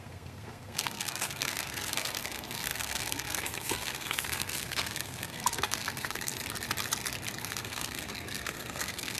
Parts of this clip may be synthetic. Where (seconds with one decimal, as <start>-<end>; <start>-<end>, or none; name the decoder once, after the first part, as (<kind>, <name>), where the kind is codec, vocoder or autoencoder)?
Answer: 0.0-6.3 (codec, SNAC); 7.4-9.2